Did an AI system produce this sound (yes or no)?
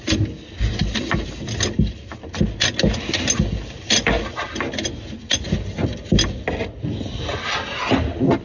no